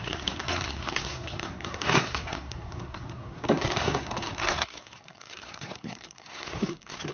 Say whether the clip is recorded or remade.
remade